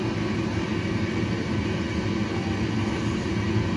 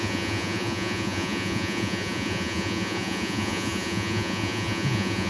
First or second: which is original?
first